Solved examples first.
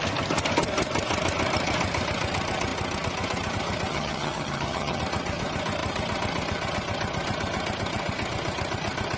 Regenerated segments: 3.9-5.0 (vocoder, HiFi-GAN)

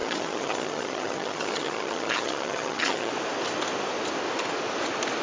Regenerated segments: 0.0-3.1 (vocoder, HiFi-GAN)

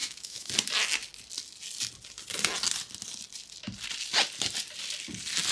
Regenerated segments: 0.0-0.5 (autoencoder, DAC-VAE)

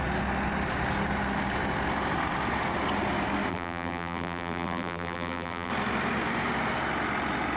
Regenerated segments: 3.5-5.7 (vocoder, BigVGAN v2)

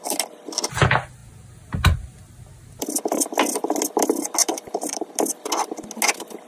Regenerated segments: 4.4-5.1 (vocoder, BigVGAN v2)